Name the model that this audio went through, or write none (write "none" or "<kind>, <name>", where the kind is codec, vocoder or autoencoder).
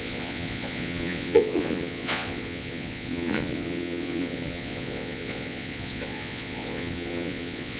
vocoder, Vocos